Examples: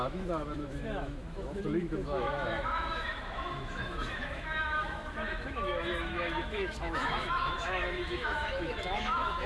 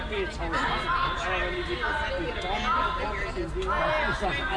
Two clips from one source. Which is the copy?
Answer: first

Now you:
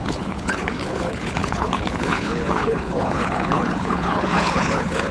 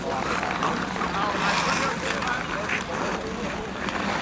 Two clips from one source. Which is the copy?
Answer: first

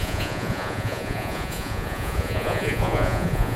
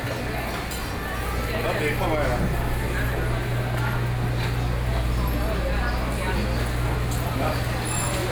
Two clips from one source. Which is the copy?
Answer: first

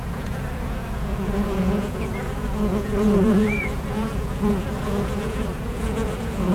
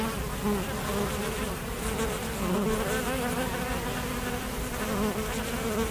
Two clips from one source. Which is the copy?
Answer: first